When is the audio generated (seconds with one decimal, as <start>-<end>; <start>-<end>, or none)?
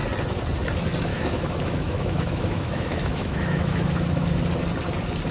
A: 1.1-4.3